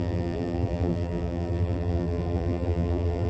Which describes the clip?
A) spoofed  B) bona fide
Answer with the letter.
A